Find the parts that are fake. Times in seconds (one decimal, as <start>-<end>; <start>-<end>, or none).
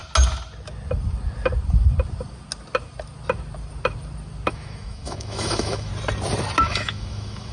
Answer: 4.5-5.9; 6.6-7.5